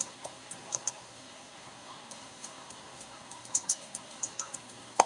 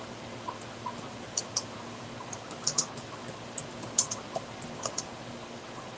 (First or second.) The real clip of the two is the second